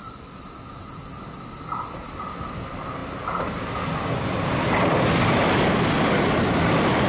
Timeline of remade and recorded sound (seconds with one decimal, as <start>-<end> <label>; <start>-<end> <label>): 0.0-7.1 recorded